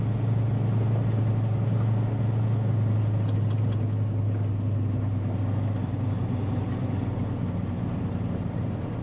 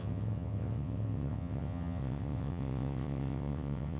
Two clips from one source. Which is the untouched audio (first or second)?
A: first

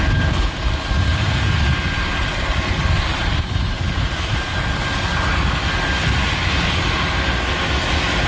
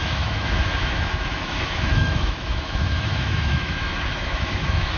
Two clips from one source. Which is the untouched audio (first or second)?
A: first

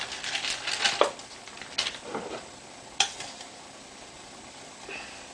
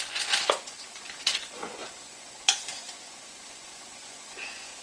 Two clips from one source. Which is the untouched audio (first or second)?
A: first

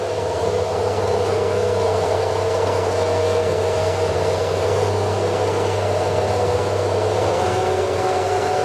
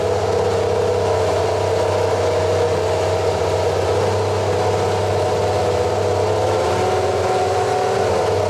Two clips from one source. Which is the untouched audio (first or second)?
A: second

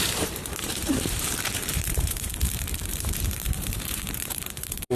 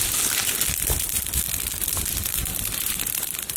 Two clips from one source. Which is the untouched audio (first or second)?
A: second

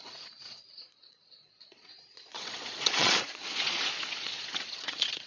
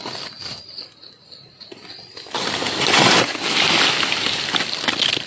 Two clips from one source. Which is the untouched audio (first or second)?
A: second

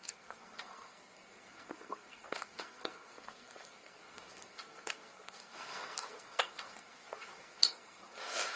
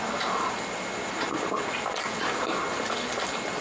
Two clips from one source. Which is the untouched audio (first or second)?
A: second